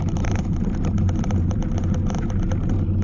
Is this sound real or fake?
fake